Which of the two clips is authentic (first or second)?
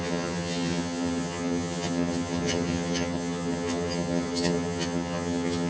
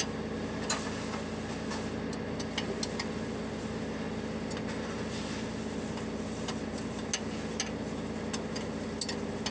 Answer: second